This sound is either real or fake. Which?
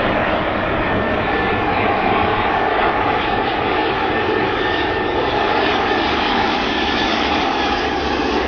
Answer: fake